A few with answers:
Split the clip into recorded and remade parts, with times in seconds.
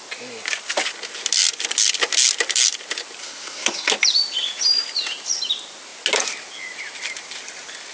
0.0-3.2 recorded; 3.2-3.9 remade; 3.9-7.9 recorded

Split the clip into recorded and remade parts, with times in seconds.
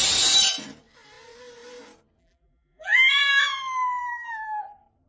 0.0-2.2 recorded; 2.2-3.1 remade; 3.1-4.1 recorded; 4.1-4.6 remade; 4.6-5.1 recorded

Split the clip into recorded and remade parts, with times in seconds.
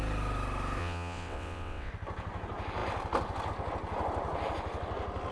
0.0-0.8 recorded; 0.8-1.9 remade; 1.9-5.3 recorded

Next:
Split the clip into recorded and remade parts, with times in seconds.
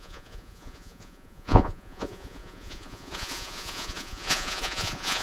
0.0-5.2 remade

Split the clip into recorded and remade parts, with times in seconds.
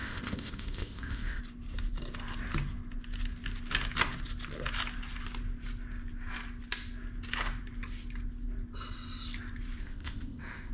0.0-1.4 remade; 1.4-9.8 recorded; 9.8-10.7 remade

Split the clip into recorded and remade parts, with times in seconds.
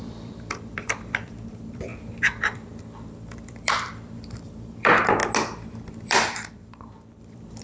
0.0-5.2 remade; 5.2-5.9 recorded; 5.9-7.6 remade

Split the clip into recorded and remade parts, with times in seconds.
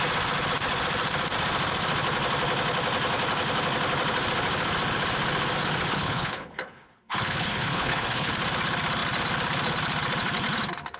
0.0-5.9 recorded; 5.9-8.3 remade; 8.3-11.0 recorded